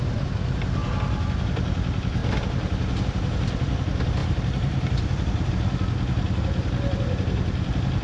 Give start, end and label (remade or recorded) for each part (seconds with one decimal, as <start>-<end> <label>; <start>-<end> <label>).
0.0-4.2 recorded; 4.2-5.5 remade; 5.5-8.0 recorded